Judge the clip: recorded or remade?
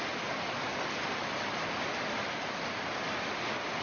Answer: recorded